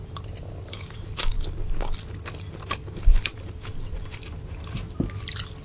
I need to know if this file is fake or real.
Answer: real